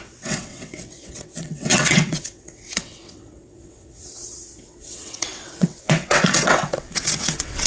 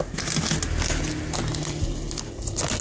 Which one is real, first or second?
second